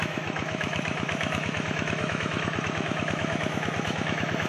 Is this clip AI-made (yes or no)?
yes